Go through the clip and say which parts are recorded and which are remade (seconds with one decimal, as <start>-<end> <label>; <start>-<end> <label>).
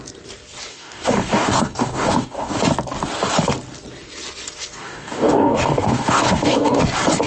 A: 0.0-0.7 recorded; 0.7-2.6 remade; 2.6-4.8 recorded; 4.8-6.8 remade; 6.8-7.3 recorded